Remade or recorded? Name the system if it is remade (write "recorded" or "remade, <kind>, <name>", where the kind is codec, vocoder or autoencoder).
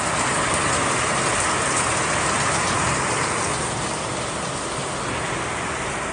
recorded